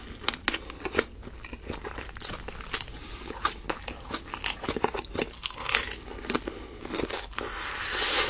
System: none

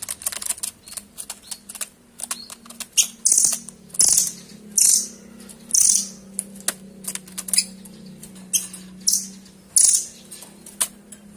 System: none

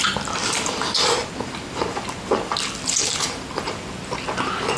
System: none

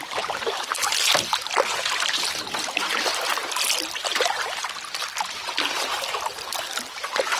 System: none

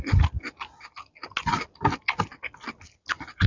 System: none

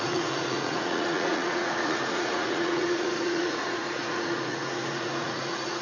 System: vocoder, Vocos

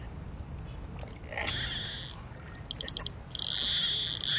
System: none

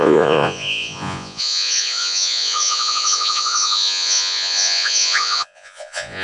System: vocoder, Vocos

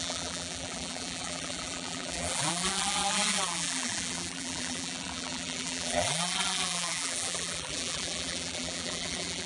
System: vocoder, BigVGAN v2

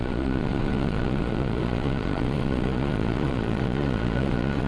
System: vocoder, Vocos